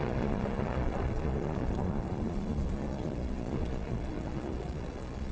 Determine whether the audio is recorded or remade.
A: remade